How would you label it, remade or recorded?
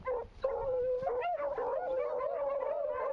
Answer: recorded